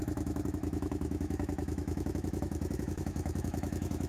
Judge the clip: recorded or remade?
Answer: remade